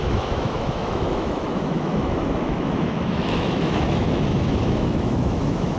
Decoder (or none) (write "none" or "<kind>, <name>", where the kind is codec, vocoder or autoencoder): autoencoder, DAC-VAE